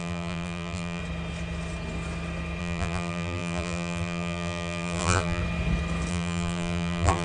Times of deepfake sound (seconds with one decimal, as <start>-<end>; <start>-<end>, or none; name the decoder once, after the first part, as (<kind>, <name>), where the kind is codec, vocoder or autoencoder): 0.0-1.0 (vocoder, BigVGAN v2); 2.6-5.4; 6.1-7.2